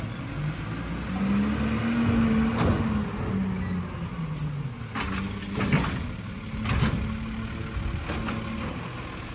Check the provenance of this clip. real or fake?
real